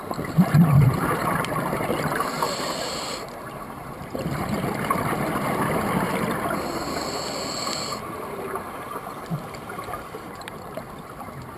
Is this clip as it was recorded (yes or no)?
no